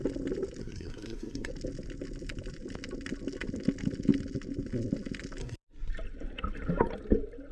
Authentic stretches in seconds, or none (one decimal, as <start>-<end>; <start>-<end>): 0.0-0.6; 1.5-5.4; 5.9-7.5